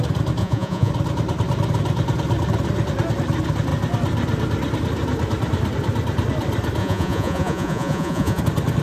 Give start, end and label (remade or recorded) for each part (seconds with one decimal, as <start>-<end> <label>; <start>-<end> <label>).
0.0-0.4 recorded; 0.4-0.9 remade; 0.9-6.8 recorded; 6.8-8.4 remade; 8.4-8.8 recorded